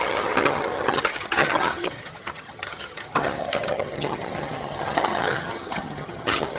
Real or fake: fake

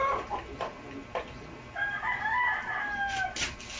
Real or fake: real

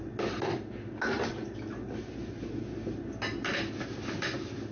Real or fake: real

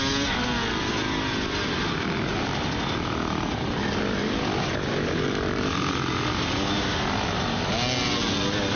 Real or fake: real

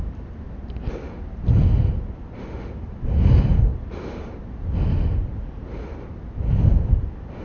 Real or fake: real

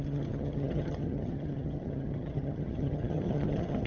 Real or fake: fake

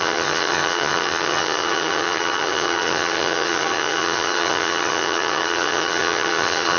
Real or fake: fake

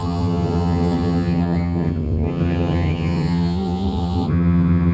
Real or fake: fake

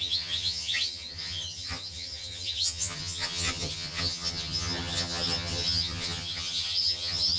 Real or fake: fake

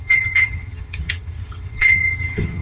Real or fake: fake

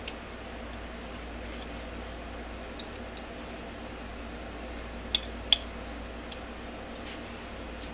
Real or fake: real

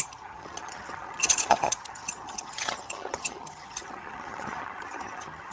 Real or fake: fake